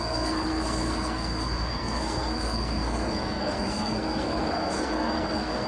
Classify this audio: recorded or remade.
remade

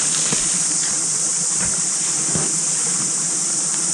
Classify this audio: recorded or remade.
remade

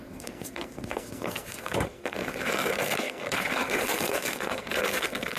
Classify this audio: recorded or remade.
remade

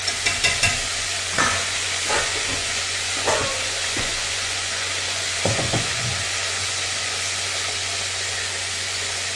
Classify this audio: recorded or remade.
remade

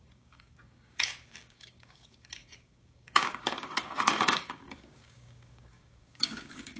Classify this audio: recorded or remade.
remade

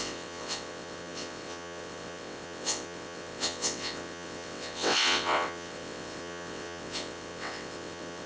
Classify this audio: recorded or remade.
remade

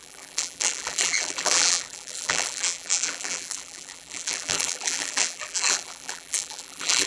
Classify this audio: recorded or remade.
remade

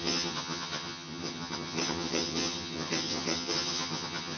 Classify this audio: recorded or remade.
remade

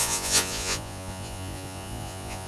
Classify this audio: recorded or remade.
remade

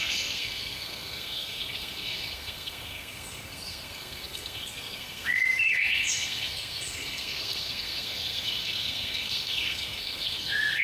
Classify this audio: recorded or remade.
remade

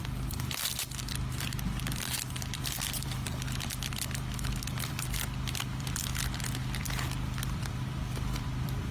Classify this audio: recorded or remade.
remade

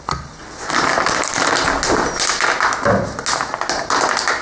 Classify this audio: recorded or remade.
recorded